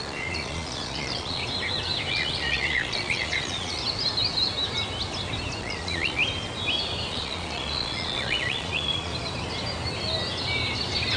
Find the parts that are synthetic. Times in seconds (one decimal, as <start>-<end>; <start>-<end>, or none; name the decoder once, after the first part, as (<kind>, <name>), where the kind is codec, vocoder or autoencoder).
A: 0.0-1.4 (vocoder, Vocos); 2.1-3.8; 5.6-6.2; 7.1-9.1